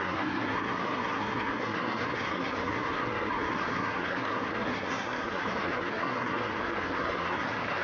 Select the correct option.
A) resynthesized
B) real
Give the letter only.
A